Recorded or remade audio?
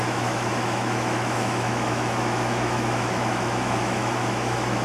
remade